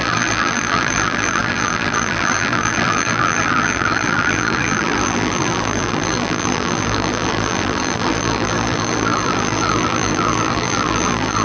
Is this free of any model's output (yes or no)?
no